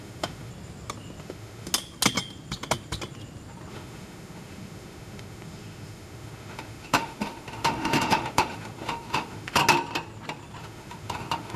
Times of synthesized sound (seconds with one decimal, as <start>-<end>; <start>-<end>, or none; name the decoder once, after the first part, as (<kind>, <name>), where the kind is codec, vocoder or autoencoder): 0.0-0.5 (autoencoder, DAC-VAE); 1.2-1.7; 3.7-9.6; 10.6-11.6